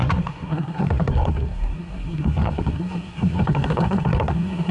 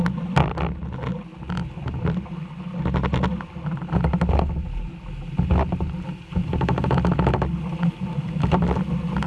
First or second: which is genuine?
second